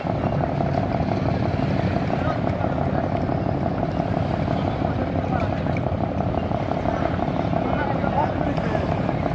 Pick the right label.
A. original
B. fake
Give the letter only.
A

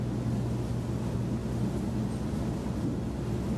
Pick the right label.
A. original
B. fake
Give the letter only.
A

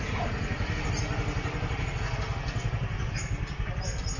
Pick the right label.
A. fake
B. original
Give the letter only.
B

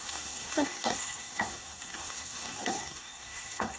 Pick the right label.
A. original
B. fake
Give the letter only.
B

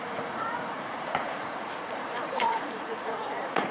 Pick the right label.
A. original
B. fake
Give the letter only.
B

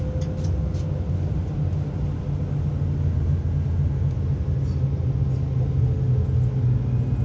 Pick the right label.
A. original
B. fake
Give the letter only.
A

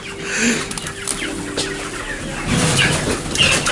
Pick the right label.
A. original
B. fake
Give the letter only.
A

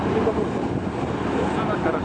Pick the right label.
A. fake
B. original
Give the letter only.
B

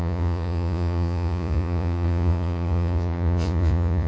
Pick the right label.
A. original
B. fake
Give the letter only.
B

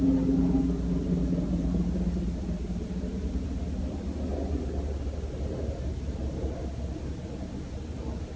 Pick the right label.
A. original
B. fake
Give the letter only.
A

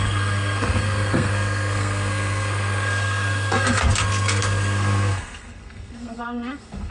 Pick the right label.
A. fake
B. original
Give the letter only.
A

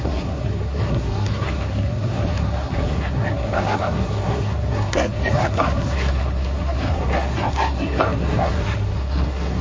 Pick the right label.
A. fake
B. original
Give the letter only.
A